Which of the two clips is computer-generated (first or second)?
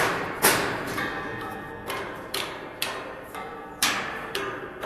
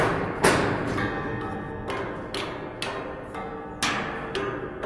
first